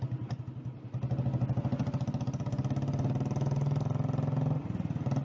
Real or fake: real